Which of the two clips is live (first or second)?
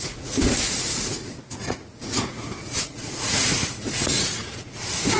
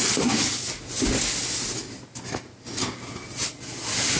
second